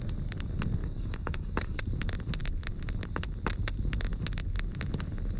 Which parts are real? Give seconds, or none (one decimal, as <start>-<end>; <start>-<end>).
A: 0.0-0.8; 1.8-5.4